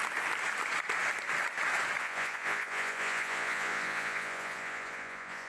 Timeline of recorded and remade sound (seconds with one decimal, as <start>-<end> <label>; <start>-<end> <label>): 0.0-2.0 recorded; 2.0-5.5 remade